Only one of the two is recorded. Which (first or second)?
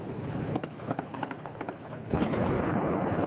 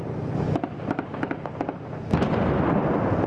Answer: second